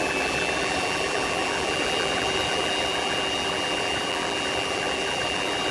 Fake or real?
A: fake